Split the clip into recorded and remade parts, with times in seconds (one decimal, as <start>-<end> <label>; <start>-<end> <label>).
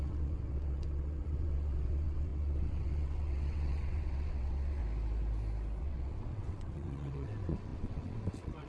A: 0.0-4.8 remade; 4.8-5.8 recorded; 5.8-8.7 remade